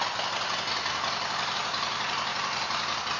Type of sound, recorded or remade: recorded